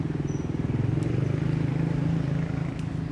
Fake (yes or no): no